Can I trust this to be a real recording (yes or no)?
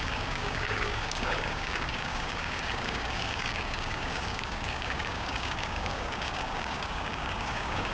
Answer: no